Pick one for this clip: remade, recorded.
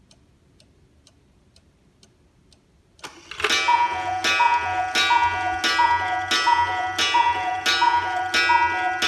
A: recorded